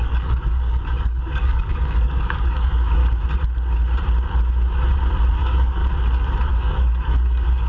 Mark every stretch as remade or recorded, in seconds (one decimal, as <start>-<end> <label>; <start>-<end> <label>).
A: 0.0-3.0 remade; 3.0-5.3 recorded; 5.3-5.8 remade; 5.8-6.5 recorded; 6.5-7.7 remade